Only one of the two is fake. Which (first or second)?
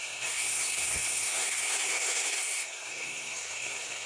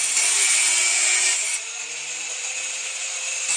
first